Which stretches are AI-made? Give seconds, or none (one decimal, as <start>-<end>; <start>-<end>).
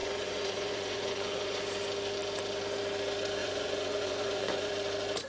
0.0-1.6; 3.4-4.7